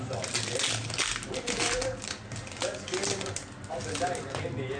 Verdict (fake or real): real